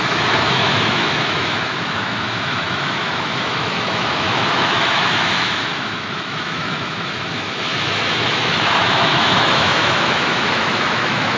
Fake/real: fake